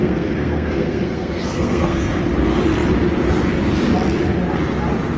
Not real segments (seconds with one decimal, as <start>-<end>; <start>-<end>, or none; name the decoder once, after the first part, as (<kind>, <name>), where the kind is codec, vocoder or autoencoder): 0.0-2.2 (codec, SNAC)